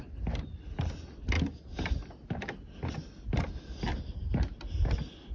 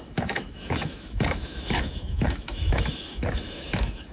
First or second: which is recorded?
first